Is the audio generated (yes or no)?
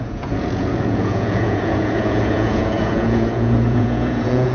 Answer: yes